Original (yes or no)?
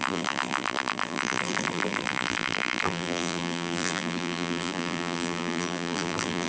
no